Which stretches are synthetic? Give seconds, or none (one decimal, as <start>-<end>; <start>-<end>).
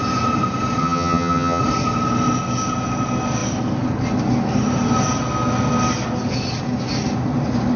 0.8-1.6